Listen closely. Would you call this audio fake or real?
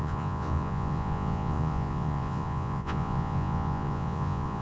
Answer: fake